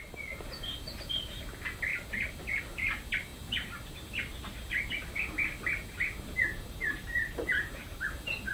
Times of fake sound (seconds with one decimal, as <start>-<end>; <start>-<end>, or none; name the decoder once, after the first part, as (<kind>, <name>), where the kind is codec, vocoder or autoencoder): 6.5-8.0 (vocoder, BigVGAN v2)